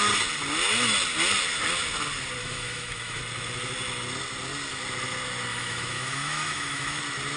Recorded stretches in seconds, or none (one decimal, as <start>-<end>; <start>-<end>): 0.0-2.4; 3.2-5.5; 7.0-7.4

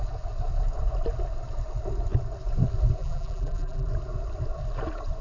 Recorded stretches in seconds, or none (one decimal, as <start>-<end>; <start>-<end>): 0.0-3.0; 3.9-5.2

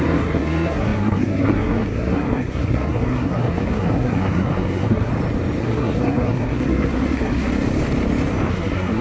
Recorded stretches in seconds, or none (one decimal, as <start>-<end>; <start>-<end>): 5.1-5.6; 7.5-8.5

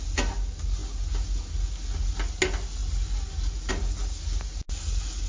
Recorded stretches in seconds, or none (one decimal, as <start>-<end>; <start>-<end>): 0.0-5.3

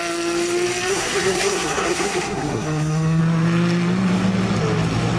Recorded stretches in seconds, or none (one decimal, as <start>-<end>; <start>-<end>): 0.0-0.9; 3.2-5.2